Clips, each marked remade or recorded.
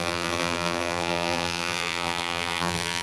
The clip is remade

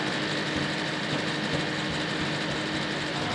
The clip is recorded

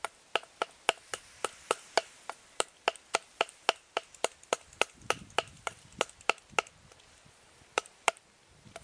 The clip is recorded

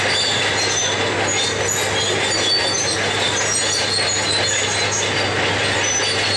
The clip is recorded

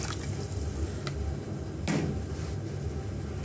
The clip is recorded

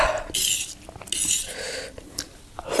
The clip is recorded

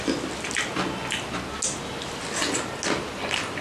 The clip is recorded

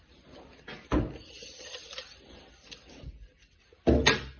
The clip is recorded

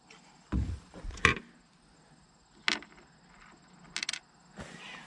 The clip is recorded